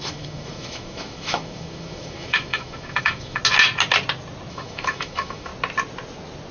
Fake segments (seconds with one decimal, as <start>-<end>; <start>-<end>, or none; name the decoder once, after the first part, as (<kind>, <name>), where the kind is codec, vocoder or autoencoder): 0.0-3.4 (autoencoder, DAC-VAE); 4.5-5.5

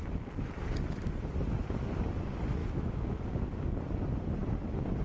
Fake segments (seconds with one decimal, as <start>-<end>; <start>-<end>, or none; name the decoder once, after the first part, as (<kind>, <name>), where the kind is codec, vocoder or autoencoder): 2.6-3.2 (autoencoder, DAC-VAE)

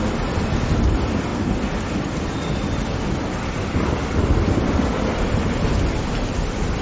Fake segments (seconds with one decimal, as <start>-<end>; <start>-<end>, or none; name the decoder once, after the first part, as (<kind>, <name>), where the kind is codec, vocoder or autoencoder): none

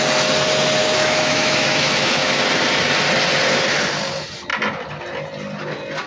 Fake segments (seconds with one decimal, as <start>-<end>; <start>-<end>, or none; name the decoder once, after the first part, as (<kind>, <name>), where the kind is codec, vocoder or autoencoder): 0.8-2.3 (autoencoder, DAC-VAE)

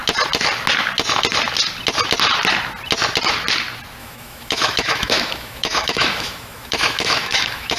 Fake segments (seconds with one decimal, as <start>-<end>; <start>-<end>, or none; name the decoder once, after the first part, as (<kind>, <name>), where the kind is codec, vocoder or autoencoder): 4.0-7.8 (autoencoder, DAC-VAE)

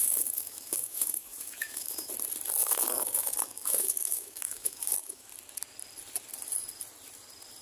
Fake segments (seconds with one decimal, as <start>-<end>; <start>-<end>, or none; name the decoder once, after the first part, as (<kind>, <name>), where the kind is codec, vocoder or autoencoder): 0.0-2.1 (autoencoder, DAC-VAE); 2.6-5.3